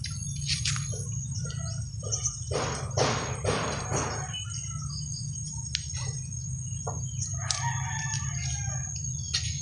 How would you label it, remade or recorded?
recorded